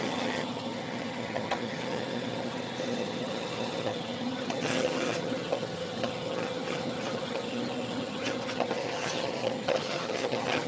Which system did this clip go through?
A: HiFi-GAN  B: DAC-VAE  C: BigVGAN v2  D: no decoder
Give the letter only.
A